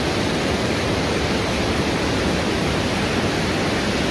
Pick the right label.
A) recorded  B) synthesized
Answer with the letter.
A